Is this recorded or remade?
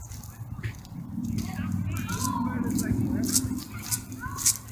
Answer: remade